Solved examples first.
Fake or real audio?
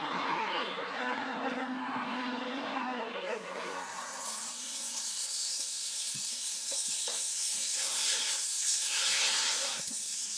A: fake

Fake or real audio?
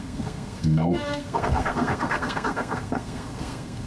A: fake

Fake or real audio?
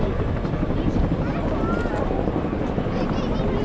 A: real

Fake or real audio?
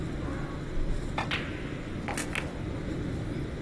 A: real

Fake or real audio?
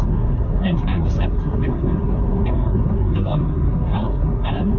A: fake